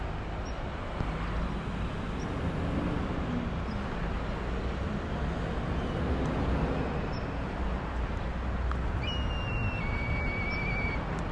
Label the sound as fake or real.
real